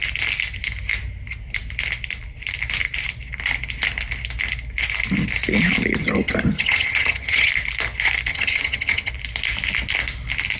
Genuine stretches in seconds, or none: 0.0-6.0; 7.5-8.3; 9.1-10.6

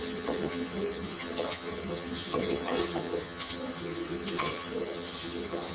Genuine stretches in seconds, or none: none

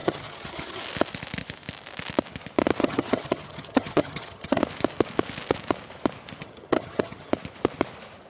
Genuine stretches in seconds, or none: 0.8-2.8; 4.6-6.4; 7.3-8.3

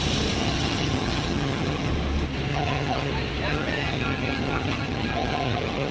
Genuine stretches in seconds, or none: 0.0-0.4; 1.9-2.5; 3.1-3.5

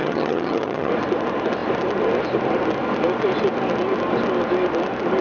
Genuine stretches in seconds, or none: 0.9-5.2

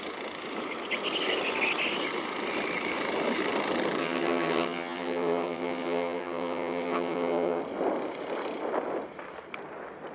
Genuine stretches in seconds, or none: 0.0-4.0; 7.6-10.1